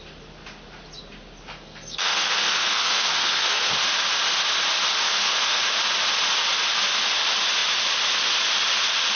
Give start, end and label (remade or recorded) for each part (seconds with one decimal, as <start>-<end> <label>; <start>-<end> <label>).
0.0-1.5 recorded; 1.5-3.7 remade; 3.7-5.0 recorded; 5.0-5.6 remade; 5.6-9.2 recorded